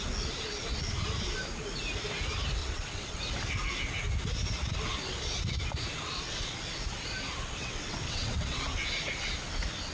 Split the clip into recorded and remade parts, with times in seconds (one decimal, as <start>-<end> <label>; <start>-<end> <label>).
0.0-2.6 recorded; 2.6-3.2 remade; 3.2-7.6 recorded; 7.6-8.6 remade; 8.6-9.9 recorded